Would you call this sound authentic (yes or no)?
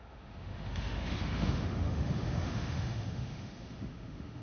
no